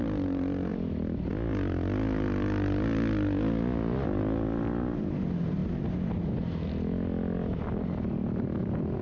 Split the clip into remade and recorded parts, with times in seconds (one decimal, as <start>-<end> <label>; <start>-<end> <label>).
0.0-9.0 recorded